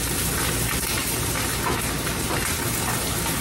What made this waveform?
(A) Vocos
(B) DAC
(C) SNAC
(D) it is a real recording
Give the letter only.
D